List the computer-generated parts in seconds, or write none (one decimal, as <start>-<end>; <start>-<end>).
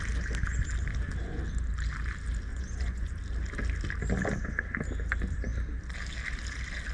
2.5-3.1